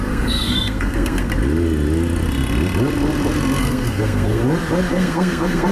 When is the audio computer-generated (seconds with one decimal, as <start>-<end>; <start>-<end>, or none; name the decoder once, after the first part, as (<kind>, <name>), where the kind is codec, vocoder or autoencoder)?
0.0-1.3 (codec, SNAC); 3.6-4.4; 4.9-5.7